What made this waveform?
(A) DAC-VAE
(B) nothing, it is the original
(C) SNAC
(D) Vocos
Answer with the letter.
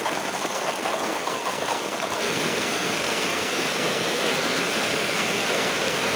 C